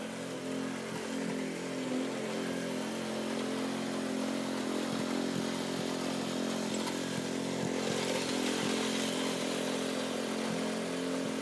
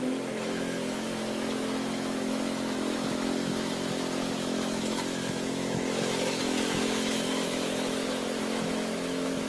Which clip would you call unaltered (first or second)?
first